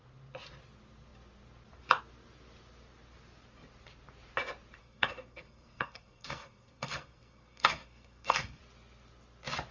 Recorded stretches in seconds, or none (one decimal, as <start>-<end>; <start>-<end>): 0.0-4.8; 8.6-9.7